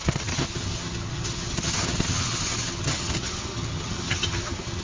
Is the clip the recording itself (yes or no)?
no